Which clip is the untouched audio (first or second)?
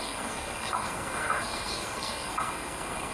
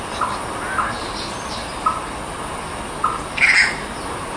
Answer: second